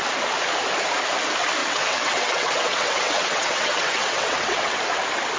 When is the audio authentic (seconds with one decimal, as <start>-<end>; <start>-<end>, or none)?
0.0-1.6; 4.8-5.4